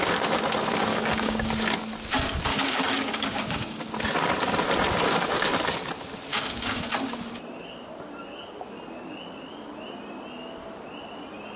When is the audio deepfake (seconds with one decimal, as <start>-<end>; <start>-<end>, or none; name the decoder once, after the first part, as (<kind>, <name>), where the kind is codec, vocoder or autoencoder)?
0.9-1.5 (codec, DAC); 2.5-3.8; 6.3-6.8